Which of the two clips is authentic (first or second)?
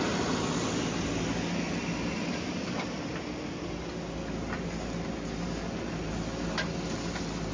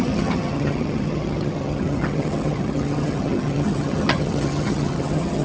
first